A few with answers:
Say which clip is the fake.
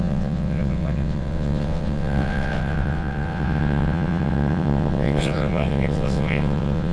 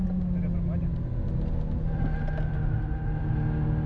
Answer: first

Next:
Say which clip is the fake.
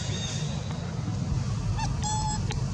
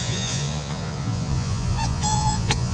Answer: second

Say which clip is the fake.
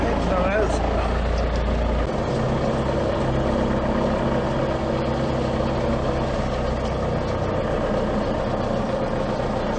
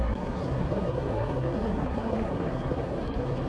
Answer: second